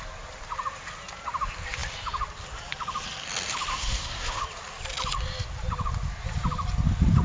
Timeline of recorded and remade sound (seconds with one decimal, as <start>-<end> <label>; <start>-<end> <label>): 0.0-3.7 recorded; 3.7-4.4 remade; 4.4-7.2 recorded